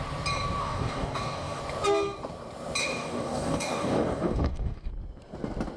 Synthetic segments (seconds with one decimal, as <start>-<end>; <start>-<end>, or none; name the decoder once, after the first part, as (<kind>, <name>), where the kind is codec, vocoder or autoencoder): 0.6-1.6 (codec, DAC); 2.8-4.9